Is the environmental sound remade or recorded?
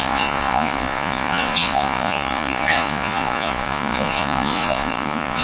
remade